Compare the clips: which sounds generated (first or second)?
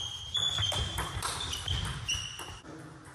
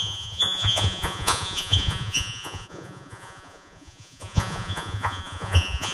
second